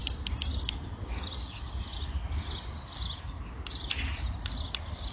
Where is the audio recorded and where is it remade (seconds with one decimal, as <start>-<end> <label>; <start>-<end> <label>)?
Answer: 0.0-5.1 recorded